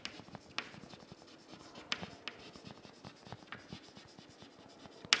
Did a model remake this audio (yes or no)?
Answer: no